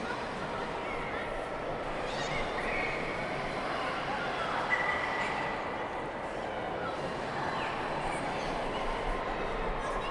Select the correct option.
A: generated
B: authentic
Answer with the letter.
B